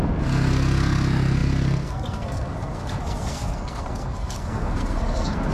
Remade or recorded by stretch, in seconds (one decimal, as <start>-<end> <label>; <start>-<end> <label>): 0.0-5.5 remade